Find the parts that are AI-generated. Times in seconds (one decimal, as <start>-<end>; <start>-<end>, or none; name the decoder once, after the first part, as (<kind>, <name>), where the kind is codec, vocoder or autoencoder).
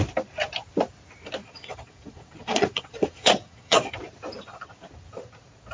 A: 1.4-3.9 (vocoder, Vocos)